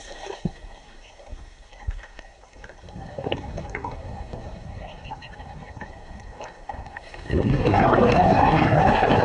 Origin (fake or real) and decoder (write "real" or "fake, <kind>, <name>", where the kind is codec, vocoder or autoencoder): fake, codec, SNAC